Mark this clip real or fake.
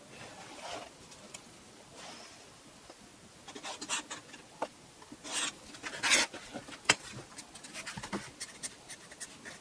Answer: real